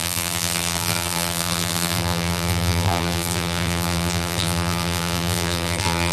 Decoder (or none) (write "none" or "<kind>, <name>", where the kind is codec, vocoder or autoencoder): vocoder, BigVGAN v2